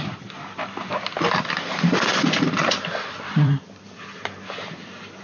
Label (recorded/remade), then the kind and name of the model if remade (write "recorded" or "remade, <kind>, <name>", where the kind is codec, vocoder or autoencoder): remade, vocoder, BigVGAN v2